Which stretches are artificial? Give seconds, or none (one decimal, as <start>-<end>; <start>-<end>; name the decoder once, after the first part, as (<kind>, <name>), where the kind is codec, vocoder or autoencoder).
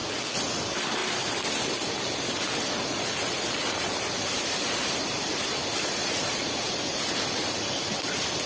6.0-7.1 (vocoder, Vocos)